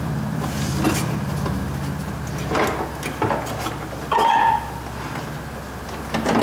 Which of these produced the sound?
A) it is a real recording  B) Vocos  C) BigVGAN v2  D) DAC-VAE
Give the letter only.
A